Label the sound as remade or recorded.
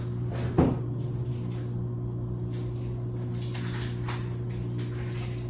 recorded